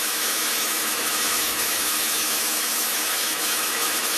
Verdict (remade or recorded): remade